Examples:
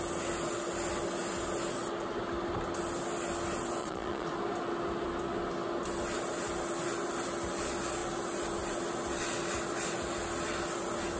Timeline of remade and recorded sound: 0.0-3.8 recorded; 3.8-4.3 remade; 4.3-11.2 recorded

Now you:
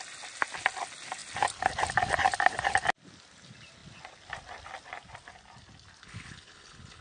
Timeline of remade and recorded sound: 0.0-6.0 recorded; 6.0-7.0 remade

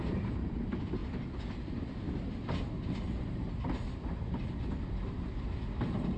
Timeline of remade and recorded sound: 0.0-6.2 recorded

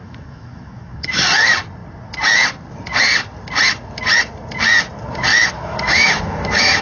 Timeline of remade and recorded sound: 0.0-1.2 remade; 1.2-5.3 recorded; 5.3-6.8 remade